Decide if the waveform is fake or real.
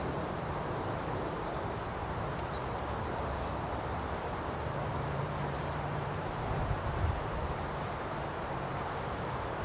fake